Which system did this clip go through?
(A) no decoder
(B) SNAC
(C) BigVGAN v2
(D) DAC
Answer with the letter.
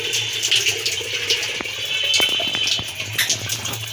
A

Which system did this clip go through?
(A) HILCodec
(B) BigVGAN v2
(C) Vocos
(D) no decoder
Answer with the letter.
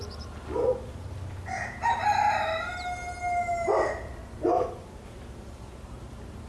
D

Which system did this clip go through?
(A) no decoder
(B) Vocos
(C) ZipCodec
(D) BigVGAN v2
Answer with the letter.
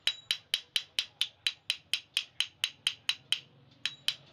A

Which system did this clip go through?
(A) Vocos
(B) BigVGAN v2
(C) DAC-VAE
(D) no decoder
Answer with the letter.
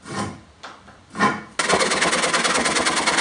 D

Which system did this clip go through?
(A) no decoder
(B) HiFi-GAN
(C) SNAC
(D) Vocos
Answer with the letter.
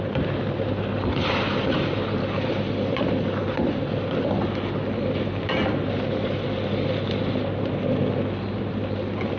A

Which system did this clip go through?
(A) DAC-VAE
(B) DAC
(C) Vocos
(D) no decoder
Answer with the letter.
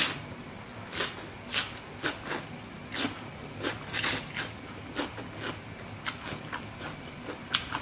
D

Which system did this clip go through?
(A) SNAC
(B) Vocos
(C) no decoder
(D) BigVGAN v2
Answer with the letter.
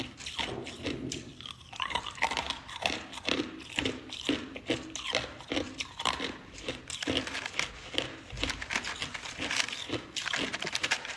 D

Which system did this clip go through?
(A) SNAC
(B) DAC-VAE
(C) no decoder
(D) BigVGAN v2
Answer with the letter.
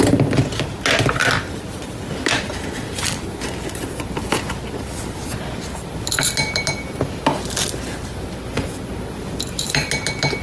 C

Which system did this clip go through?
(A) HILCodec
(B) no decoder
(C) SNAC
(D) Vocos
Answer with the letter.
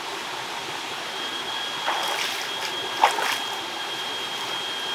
B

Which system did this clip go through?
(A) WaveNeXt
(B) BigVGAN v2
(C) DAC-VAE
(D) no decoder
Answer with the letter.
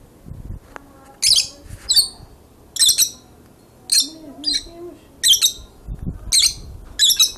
D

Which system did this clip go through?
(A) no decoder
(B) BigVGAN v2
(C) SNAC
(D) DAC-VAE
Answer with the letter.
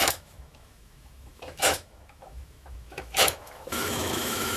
D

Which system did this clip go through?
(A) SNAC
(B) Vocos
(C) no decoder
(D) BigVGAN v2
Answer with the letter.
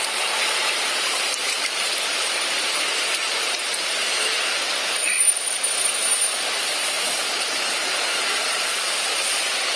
D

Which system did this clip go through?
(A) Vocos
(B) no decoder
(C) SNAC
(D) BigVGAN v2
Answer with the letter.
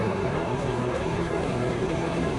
C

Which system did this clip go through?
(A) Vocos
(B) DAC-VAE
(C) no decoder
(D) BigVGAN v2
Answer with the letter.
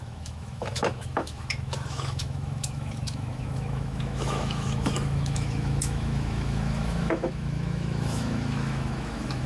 B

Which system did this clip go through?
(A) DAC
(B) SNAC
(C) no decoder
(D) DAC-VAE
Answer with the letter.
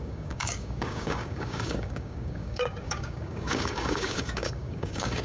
A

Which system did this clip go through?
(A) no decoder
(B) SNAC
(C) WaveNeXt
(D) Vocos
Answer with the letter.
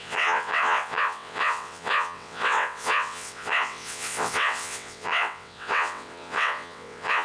C